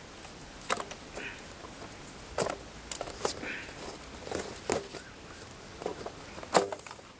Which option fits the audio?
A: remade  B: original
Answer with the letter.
B